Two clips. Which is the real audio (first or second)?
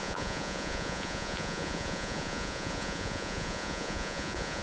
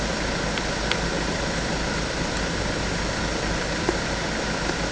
second